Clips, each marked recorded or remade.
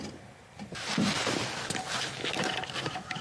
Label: recorded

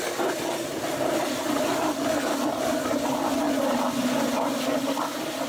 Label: recorded